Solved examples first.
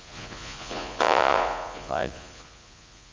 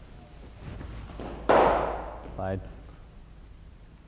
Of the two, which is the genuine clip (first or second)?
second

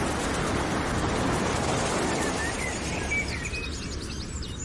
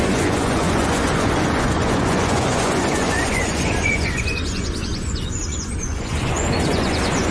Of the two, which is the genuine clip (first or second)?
first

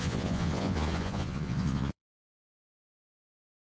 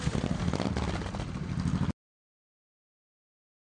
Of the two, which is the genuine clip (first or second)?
second